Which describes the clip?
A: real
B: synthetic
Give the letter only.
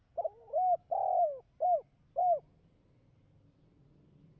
A